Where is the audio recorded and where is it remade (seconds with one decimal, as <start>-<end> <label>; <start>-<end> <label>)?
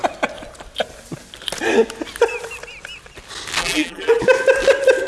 0.0-3.6 recorded; 3.6-4.2 remade; 4.2-5.1 recorded